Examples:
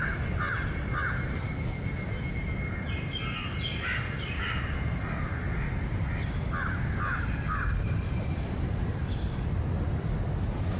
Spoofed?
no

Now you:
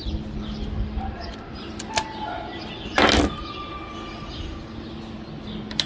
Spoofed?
no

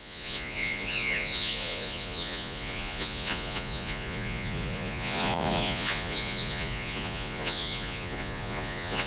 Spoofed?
yes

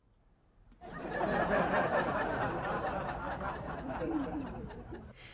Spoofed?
yes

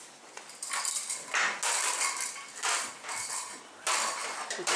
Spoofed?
no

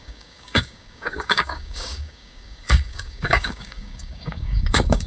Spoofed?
yes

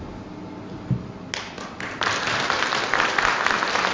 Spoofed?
no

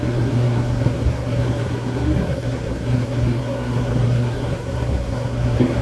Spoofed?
yes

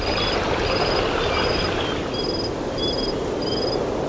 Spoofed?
no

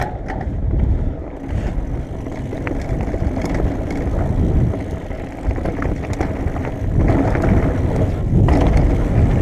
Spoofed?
no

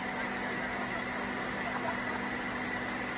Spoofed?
no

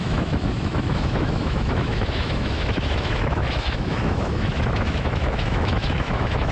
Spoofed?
yes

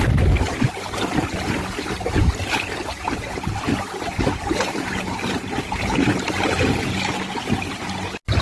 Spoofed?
no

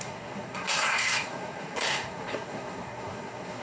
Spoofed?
yes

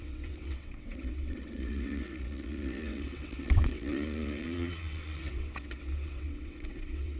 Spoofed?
yes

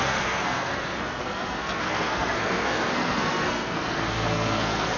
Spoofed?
yes